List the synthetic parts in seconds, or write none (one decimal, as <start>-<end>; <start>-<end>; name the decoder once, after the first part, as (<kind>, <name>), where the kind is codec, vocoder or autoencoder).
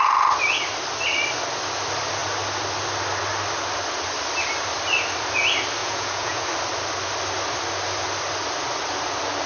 5.8-6.5 (vocoder, Vocos)